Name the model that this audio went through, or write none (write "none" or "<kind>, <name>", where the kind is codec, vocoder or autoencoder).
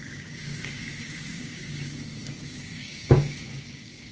codec, DAC